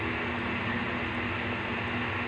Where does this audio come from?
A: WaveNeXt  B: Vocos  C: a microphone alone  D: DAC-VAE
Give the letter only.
C